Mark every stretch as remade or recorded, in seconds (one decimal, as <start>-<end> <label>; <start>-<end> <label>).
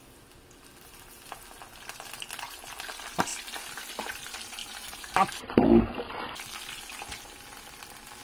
0.0-4.6 recorded; 4.6-6.1 remade; 6.1-8.2 recorded